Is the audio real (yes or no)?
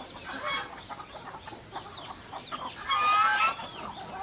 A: yes